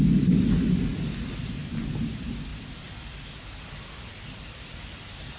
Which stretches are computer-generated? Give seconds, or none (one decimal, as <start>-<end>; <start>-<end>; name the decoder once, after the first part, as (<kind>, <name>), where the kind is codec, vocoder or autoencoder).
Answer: none